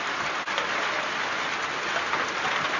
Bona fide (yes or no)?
yes